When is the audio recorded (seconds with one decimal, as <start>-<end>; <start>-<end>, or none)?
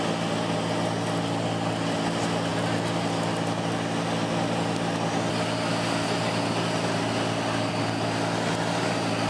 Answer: 0.0-9.3